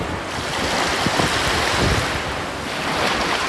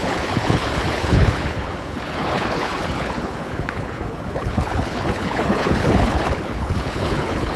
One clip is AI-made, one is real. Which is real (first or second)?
first